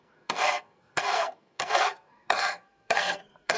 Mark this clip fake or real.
fake